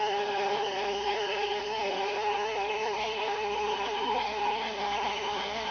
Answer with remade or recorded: remade